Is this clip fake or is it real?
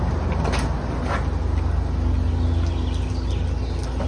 real